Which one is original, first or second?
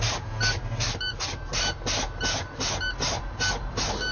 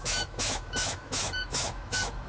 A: first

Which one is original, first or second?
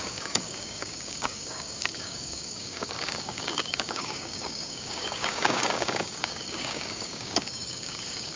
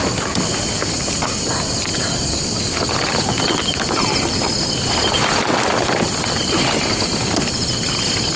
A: second